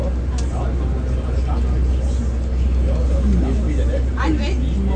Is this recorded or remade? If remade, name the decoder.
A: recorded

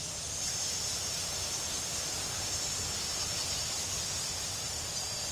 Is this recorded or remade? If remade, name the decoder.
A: recorded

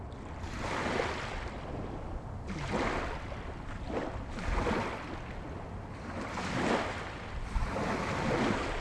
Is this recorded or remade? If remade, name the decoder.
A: recorded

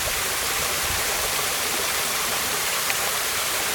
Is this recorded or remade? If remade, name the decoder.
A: remade, vocoder, BigVGAN v2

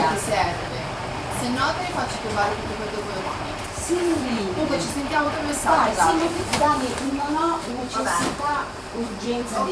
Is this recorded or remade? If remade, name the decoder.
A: remade, vocoder, BigVGAN v2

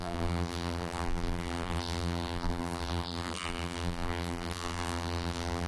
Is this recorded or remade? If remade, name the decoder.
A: remade, vocoder, BigVGAN v2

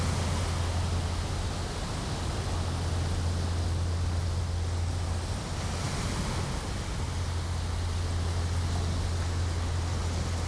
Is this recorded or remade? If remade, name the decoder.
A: recorded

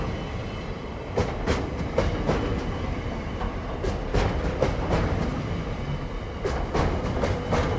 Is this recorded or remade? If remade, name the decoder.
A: recorded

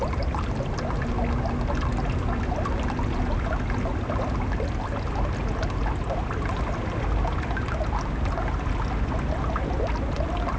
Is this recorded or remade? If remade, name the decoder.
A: recorded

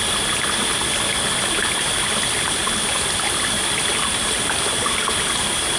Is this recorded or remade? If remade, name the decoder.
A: recorded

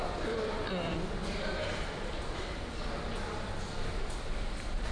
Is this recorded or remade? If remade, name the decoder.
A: remade, vocoder, BigVGAN v2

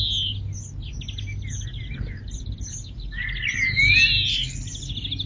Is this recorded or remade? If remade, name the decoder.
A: recorded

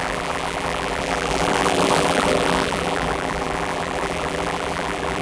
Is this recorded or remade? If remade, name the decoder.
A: remade, vocoder, BigVGAN v2